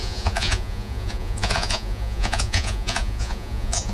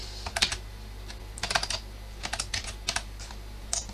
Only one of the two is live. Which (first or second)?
second